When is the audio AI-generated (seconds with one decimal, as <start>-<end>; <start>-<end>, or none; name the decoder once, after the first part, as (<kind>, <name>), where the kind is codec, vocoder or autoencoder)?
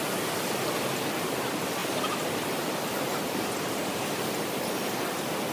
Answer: 1.8-3.4 (vocoder, BigVGAN v2)